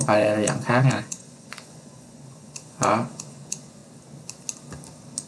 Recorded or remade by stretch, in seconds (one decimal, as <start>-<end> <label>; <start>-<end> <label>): 0.0-3.8 remade; 3.8-5.3 recorded